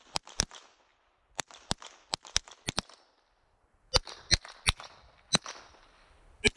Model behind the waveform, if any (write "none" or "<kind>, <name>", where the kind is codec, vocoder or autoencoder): none